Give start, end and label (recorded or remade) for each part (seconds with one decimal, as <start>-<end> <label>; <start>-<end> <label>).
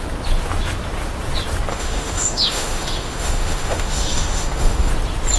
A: 0.0-1.7 recorded; 1.7-4.9 remade; 4.9-5.4 recorded